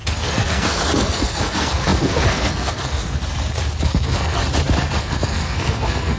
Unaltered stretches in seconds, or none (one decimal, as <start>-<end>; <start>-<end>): 3.2-3.8; 4.4-5.0